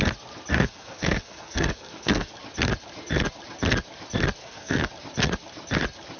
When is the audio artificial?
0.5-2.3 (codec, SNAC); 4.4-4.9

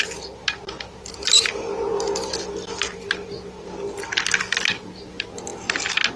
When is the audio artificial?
none

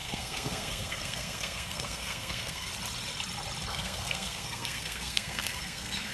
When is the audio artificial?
0.0-2.7 (codec, SNAC); 3.7-6.1